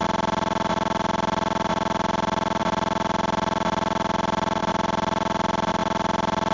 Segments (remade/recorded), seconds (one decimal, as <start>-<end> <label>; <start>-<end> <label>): 0.0-6.5 recorded